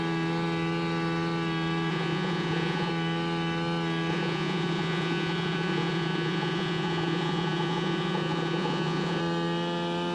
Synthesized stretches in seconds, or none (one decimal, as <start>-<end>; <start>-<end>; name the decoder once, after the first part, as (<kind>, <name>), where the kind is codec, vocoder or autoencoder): 1.9-2.9 (vocoder, Vocos); 4.1-9.2